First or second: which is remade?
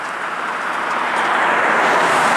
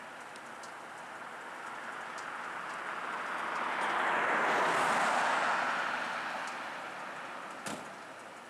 first